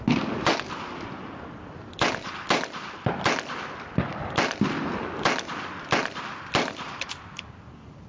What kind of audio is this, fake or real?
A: real